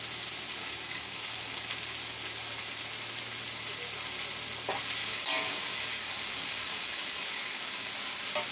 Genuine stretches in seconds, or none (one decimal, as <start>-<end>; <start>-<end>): 0.0-0.6; 1.7-5.0; 7.9-8.5